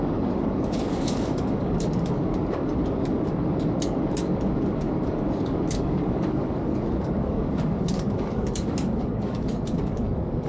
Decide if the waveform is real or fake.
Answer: fake